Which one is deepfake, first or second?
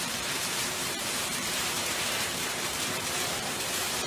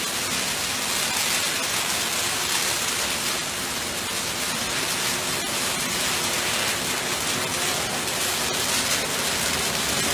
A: first